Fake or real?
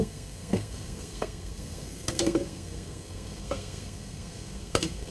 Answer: fake